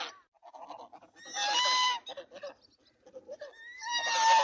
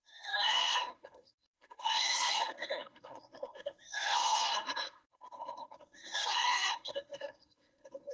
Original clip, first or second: first